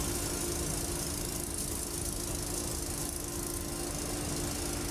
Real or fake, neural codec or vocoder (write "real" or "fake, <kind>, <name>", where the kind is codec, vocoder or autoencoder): real